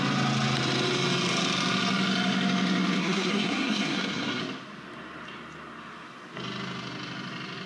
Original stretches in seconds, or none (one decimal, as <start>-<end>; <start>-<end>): 0.0-3.0; 4.4-7.7